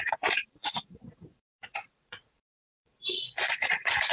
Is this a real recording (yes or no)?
no